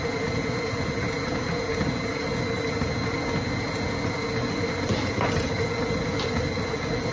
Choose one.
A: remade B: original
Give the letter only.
B